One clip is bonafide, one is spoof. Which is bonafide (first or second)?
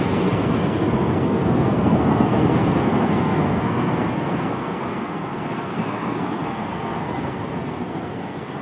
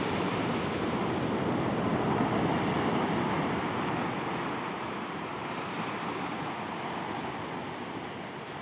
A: second